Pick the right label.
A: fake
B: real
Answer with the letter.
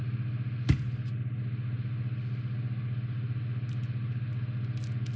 B